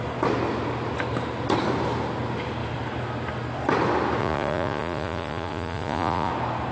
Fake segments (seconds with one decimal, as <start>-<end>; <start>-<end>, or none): 4.2-6.3